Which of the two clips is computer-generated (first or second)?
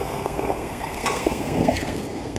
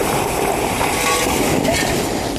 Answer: first